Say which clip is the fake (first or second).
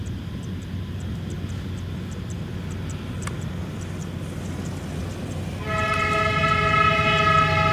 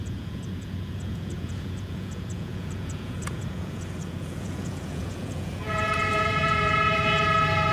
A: second